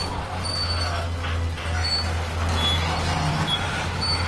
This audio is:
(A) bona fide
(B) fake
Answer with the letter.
A